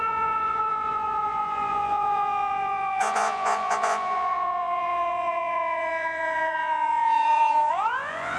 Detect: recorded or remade remade